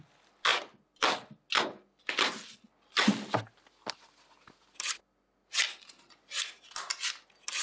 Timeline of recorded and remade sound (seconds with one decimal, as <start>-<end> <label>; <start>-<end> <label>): 0.0-7.6 recorded